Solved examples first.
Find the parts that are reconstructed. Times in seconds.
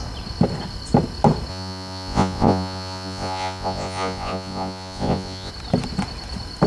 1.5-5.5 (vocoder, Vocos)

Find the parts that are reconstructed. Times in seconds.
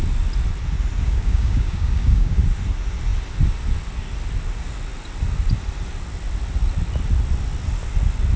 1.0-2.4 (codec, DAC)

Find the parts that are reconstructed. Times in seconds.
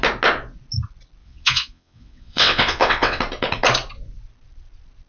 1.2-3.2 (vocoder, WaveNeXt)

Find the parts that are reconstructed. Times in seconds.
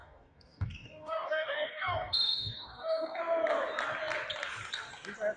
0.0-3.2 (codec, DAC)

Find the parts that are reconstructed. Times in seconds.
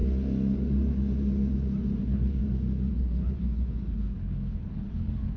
2.0-2.4 (codec, HILCodec); 3.0-5.4